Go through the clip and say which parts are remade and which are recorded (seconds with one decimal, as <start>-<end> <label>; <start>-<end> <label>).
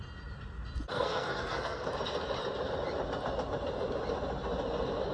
0.0-0.9 recorded; 0.9-1.9 remade; 1.9-5.1 recorded